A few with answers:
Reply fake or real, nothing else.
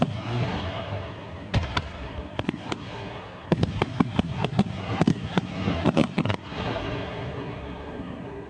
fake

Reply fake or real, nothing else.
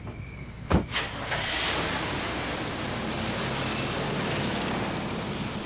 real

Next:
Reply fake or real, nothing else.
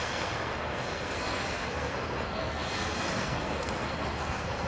fake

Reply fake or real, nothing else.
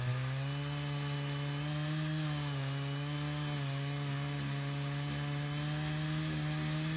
real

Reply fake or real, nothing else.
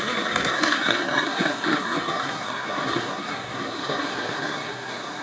fake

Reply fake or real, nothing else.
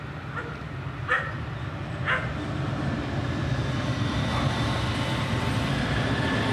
real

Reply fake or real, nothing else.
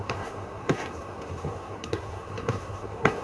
fake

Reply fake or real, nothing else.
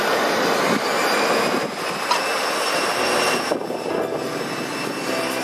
real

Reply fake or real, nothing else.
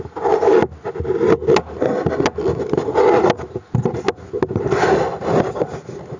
real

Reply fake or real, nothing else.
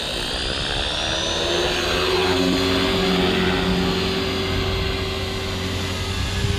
real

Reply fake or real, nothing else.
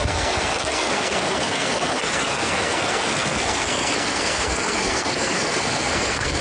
fake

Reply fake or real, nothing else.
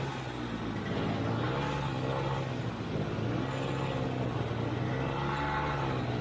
real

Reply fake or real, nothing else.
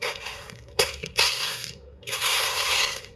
fake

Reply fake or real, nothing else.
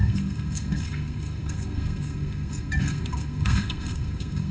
fake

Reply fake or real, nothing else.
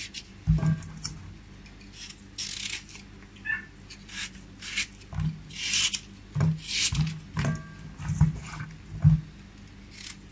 real